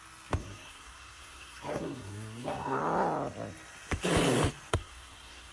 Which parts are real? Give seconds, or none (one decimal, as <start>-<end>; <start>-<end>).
0.0-0.4; 2.8-4.7